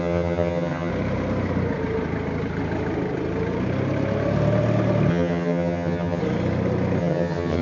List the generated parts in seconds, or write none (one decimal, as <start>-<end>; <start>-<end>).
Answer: 0.0-0.9; 5.1-6.2; 7.0-7.6